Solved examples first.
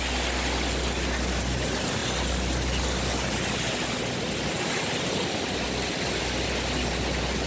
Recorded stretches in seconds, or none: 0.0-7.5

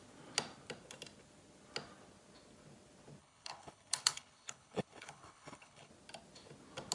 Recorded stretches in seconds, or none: 0.0-3.2; 5.9-6.9

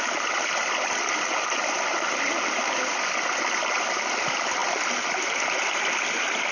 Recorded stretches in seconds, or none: 0.0-6.5

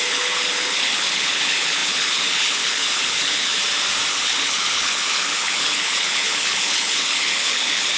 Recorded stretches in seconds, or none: 3.5-4.1

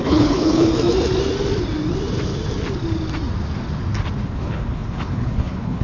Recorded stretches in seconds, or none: 0.7-4.2

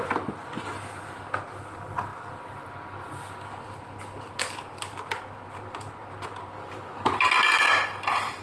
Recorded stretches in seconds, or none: 0.0-8.4